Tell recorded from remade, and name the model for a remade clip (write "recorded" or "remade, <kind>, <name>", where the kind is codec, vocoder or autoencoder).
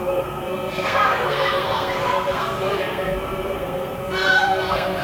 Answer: remade, codec, SNAC